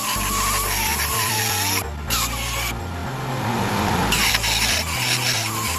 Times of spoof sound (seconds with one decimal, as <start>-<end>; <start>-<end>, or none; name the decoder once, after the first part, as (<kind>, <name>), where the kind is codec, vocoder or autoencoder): 0.9-1.4 (vocoder, BigVGAN v2)